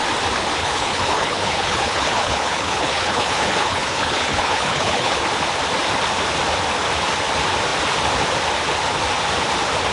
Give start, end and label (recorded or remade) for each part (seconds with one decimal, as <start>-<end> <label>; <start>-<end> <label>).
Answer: 0.0-0.6 recorded; 0.6-5.2 remade; 5.2-9.9 recorded